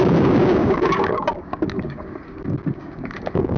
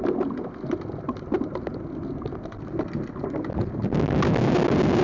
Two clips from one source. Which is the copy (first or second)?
first